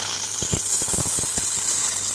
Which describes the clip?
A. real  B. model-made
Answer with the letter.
B